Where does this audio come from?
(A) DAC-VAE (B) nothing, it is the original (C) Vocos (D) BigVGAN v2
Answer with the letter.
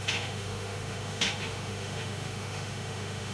A